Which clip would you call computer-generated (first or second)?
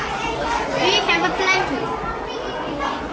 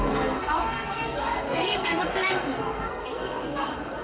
second